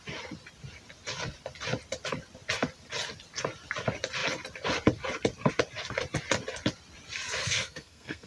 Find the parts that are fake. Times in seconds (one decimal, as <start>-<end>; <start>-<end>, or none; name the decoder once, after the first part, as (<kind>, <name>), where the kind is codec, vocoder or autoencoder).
7.4-8.3 (codec, SNAC)